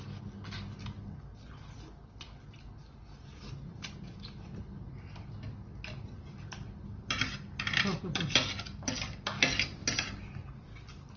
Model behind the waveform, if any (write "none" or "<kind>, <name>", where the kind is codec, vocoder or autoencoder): none